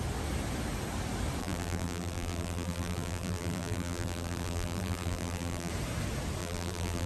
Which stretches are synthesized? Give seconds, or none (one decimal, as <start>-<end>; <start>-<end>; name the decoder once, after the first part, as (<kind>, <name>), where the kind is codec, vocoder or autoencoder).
1.4-5.7 (vocoder, BigVGAN v2); 6.4-7.1